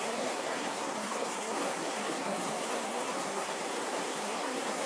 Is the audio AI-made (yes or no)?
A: yes